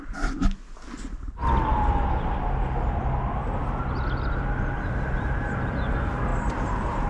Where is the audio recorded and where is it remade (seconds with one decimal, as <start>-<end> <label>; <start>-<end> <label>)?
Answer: 0.0-6.3 recorded; 6.3-7.1 remade